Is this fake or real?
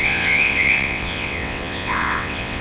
fake